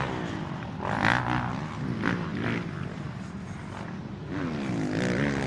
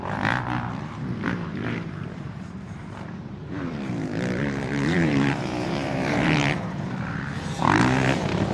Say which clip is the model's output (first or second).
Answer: second